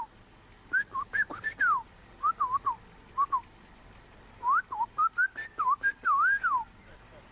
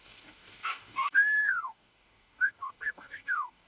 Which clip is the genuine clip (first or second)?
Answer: first